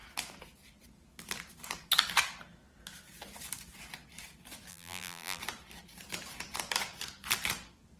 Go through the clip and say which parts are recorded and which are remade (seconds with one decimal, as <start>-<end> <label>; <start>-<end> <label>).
0.0-4.7 recorded; 4.7-5.4 remade; 5.4-8.0 recorded

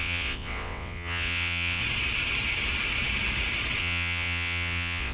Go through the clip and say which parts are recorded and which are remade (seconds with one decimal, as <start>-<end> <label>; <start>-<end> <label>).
0.0-1.8 remade; 1.8-3.8 recorded; 3.8-5.1 remade

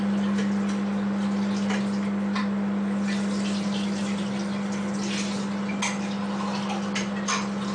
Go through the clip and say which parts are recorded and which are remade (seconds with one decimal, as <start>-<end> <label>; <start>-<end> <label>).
0.0-7.7 recorded